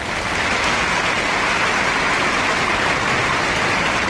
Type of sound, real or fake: real